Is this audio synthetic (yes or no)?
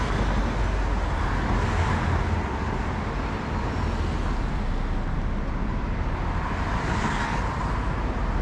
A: no